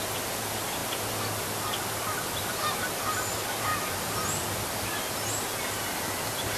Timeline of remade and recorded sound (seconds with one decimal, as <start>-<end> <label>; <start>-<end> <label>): 0.0-6.6 recorded